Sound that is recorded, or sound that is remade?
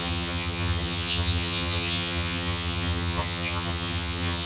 remade